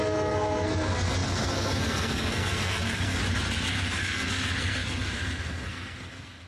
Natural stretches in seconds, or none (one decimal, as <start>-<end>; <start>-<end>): 3.2-3.7